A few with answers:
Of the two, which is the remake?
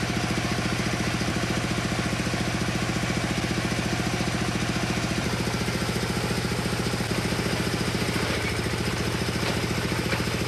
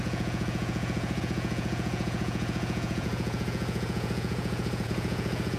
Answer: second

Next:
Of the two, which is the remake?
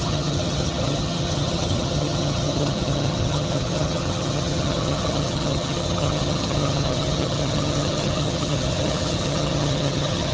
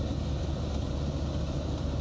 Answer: first